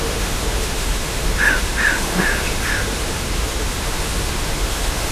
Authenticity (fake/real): fake